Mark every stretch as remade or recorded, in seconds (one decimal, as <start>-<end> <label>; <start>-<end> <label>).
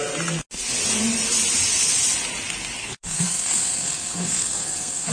0.0-2.8 recorded; 2.8-5.1 remade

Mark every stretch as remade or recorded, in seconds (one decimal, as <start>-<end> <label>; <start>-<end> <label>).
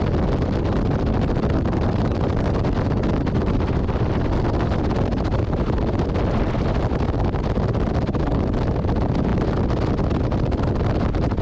0.0-11.4 recorded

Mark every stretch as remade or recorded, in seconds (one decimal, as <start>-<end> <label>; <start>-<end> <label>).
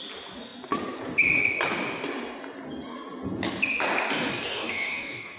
0.0-4.3 recorded; 4.3-5.4 remade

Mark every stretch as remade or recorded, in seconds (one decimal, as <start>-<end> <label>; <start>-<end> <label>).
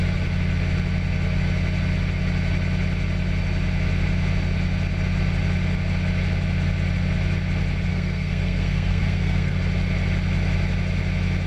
0.0-7.9 recorded; 7.9-9.6 remade; 9.6-11.5 recorded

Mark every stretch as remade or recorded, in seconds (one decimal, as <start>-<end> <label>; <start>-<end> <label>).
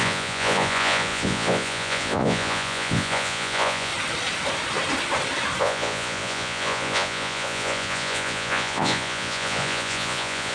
0.0-3.9 remade; 3.9-5.6 recorded; 5.6-10.5 remade